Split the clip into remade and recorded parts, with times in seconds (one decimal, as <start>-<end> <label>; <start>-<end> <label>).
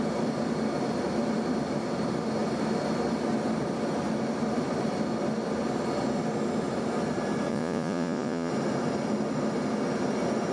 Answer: 0.0-7.5 recorded; 7.5-8.5 remade; 8.5-10.5 recorded